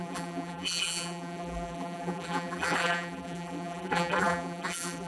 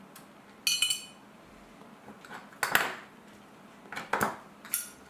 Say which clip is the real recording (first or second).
second